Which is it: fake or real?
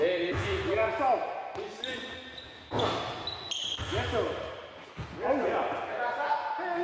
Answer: real